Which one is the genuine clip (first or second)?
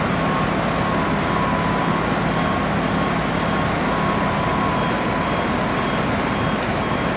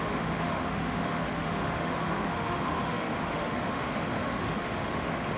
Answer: first